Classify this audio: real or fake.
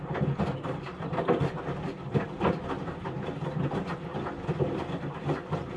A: real